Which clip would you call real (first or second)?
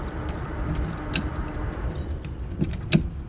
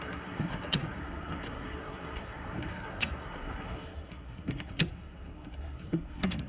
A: first